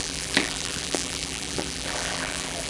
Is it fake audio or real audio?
fake